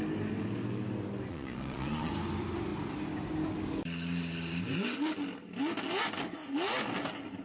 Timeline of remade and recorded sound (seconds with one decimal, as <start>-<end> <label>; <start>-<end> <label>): 0.0-1.3 recorded; 1.3-2.1 remade; 2.1-7.4 recorded